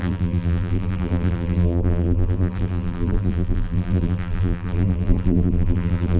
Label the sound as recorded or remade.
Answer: remade